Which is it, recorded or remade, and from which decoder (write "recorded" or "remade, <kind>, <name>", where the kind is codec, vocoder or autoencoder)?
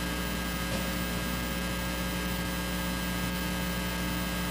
recorded